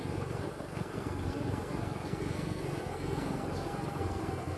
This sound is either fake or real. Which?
fake